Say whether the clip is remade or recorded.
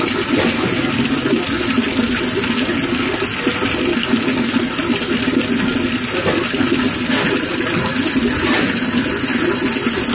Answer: recorded